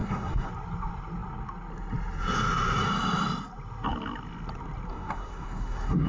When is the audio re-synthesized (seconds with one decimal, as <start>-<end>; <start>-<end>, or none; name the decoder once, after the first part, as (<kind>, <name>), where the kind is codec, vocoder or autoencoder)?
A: 0.0-0.5 (codec, SNAC); 4.9-6.1